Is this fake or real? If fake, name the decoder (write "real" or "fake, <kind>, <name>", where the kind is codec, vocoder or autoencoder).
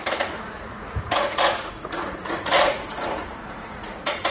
fake, vocoder, Vocos